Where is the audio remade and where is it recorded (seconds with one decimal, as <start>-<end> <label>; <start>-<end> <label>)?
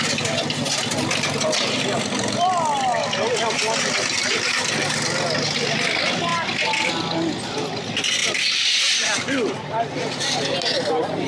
0.0-11.3 recorded